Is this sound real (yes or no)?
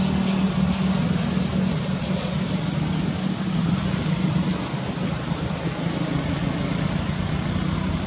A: yes